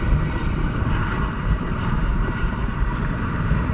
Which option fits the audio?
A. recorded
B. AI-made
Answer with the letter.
B